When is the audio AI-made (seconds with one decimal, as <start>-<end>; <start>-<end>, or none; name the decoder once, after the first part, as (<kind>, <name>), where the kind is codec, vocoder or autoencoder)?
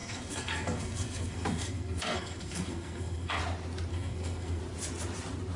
0.0-3.4 (codec, SNAC); 3.9-4.6